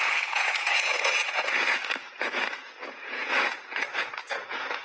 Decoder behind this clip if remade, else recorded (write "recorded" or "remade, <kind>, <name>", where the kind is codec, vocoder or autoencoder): remade, vocoder, Vocos